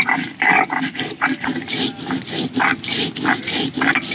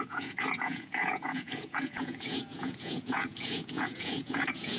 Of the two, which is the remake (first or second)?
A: second